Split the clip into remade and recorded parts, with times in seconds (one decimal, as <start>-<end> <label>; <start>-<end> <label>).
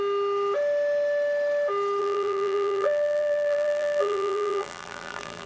0.0-2.0 recorded; 2.0-5.5 remade